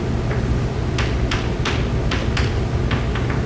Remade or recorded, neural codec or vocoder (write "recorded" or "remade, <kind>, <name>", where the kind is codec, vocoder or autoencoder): recorded